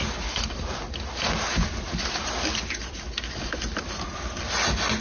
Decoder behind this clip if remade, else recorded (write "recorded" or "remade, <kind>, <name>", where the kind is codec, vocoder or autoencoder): recorded